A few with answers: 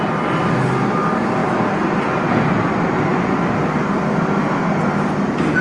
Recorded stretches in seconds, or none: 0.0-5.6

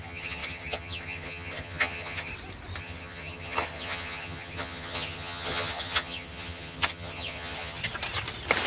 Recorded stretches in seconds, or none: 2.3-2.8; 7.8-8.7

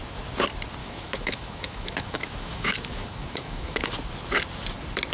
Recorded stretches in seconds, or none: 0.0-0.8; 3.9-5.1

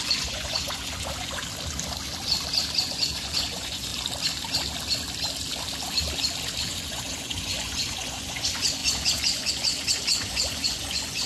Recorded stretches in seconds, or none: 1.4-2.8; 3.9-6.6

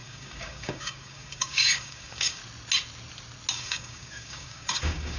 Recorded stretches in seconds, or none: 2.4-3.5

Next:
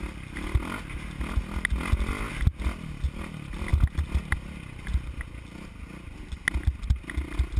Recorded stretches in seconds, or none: 0.0-7.6